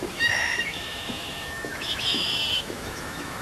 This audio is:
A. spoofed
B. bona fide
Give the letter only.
A